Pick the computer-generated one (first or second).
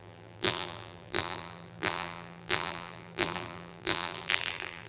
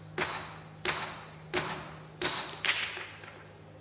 first